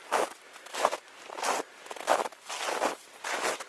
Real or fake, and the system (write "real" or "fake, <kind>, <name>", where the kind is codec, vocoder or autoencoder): real